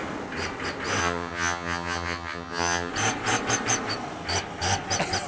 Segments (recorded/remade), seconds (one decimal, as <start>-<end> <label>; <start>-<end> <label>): 0.0-1.0 recorded; 1.0-2.9 remade; 2.9-5.3 recorded